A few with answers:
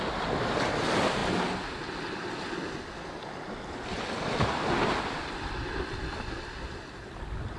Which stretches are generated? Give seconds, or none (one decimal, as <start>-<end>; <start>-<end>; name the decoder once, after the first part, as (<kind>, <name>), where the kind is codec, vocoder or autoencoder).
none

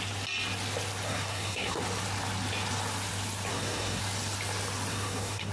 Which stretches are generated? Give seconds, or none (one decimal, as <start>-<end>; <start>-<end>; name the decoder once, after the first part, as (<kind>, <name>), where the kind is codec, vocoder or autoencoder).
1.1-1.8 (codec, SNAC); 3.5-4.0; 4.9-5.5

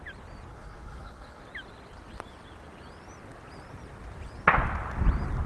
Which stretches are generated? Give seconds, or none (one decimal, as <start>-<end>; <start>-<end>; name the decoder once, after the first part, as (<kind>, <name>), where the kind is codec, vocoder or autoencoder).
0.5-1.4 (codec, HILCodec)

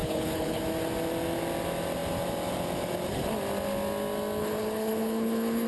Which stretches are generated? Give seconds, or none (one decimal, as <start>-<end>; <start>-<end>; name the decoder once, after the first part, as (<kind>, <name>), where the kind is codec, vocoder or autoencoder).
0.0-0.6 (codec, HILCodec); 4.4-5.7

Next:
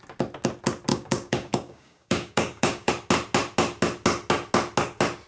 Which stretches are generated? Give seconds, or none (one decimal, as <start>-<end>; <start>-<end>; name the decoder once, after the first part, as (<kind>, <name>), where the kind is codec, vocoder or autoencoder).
0.9-2.9 (codec, DAC)

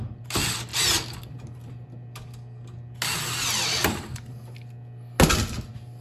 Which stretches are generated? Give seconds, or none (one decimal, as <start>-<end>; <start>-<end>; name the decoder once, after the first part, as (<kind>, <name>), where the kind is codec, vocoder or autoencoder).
none

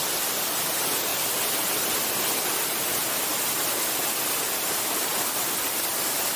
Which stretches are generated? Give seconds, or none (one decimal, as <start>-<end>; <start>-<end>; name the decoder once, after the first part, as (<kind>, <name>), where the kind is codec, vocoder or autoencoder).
none